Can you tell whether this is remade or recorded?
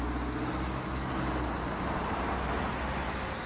recorded